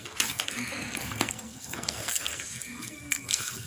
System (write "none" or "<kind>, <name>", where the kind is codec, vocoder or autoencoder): codec, SNAC